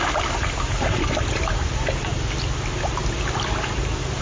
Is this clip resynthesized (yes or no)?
no